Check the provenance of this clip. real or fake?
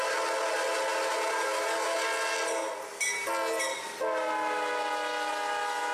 real